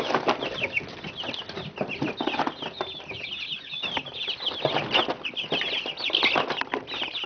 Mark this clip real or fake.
real